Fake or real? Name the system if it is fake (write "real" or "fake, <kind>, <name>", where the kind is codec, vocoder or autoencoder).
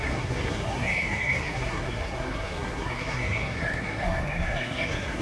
fake, codec, SNAC